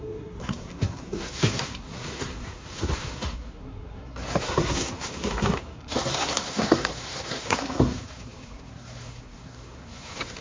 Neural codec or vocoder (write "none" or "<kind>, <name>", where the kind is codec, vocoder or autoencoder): codec, SNAC